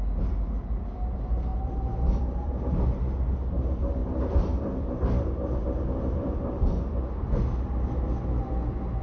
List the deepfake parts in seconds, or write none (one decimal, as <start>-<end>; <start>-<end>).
1.5-2.2; 4.0-6.5